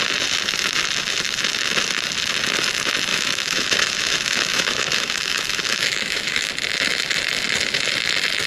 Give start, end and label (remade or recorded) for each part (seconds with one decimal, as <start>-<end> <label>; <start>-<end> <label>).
0.0-3.1 recorded; 3.1-6.5 remade; 6.5-8.5 recorded